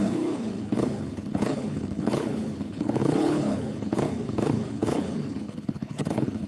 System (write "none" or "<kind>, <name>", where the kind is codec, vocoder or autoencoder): codec, HILCodec